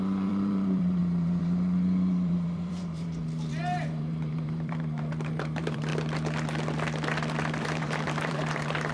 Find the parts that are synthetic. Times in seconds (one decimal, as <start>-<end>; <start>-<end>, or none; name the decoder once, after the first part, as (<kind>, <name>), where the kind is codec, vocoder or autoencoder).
0.0-5.9 (vocoder, BigVGAN v2); 7.4-8.9